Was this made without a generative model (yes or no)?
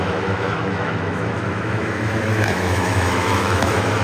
no